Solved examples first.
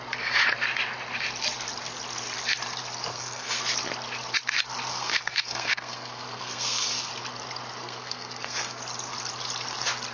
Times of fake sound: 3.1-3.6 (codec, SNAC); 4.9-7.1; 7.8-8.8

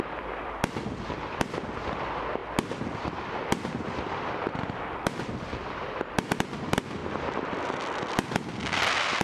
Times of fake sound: 0.0-7.0 (vocoder, BigVGAN v2); 8.1-9.2

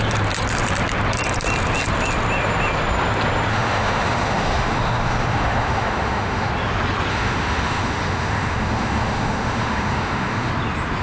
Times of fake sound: 3.5-6.5 (autoencoder, DAC-VAE); 7.1-10.5

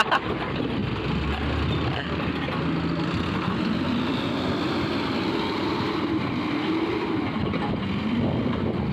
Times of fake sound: none

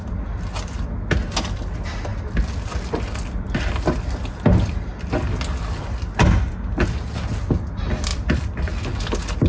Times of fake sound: 8.1-8.8 (vocoder, BigVGAN v2)